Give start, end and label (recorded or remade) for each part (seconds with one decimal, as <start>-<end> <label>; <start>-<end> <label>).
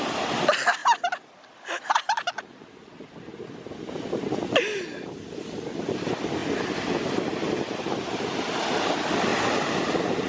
0.0-10.3 recorded